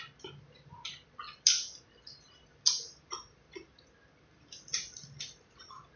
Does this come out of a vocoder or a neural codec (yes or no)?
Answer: no